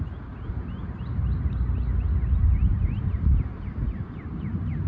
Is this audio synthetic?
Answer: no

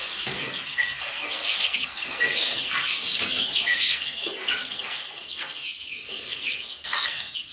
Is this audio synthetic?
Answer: yes